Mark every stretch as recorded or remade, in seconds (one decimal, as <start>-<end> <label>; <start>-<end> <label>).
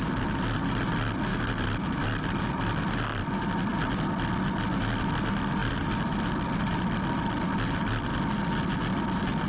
0.0-9.5 recorded